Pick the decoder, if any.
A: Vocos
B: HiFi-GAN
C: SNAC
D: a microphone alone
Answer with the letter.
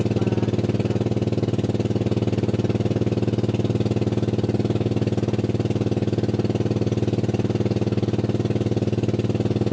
D